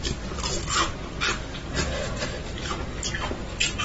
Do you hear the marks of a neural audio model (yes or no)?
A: no